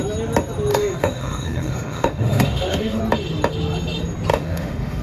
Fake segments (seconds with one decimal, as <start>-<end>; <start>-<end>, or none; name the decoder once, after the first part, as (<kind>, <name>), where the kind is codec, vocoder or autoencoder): 0.7-3.0 (autoencoder, DAC-VAE); 4.3-5.0